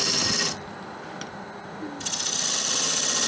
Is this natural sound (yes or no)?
yes